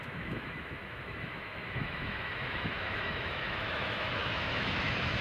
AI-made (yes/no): yes